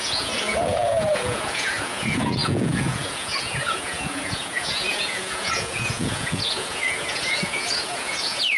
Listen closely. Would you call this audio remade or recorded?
remade